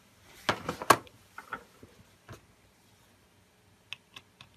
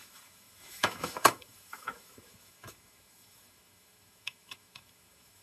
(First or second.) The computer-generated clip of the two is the second